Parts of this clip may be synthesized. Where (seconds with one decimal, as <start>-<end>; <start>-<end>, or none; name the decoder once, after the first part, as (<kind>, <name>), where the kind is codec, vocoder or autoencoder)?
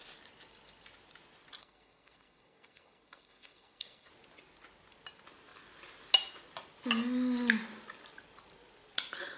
1.6-4.1 (codec, SNAC)